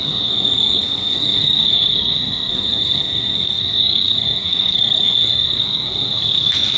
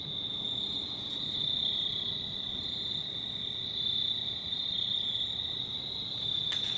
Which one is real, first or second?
second